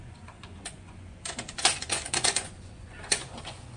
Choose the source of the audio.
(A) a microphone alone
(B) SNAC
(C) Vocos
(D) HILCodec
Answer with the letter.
C